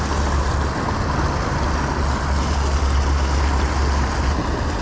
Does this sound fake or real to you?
real